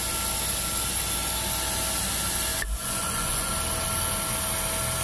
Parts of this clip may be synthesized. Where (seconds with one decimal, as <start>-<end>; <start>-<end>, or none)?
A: 2.5-3.5